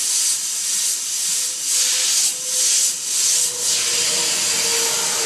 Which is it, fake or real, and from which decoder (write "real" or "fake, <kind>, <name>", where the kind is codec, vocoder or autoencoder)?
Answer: real